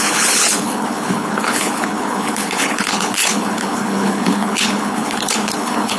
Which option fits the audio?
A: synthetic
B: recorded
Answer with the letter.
A